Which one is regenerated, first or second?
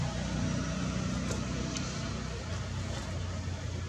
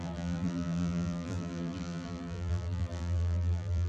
second